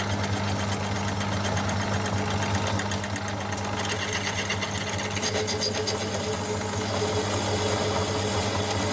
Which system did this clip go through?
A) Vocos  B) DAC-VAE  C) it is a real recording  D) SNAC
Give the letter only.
C